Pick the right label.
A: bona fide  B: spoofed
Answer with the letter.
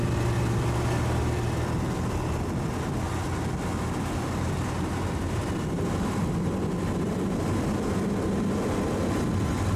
A